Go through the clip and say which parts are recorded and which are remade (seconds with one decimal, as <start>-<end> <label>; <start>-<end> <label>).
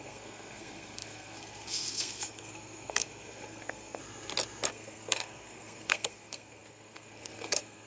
0.0-4.0 remade; 4.0-4.7 recorded; 4.7-7.9 remade